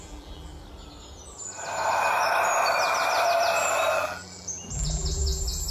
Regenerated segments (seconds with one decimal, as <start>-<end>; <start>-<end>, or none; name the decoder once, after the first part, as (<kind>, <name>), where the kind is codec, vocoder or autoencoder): 0.0-0.5 (vocoder, BigVGAN v2); 3.9-5.7